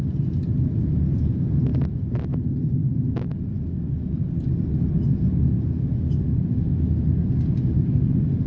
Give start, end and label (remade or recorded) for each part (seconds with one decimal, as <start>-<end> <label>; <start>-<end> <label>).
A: 0.0-8.5 recorded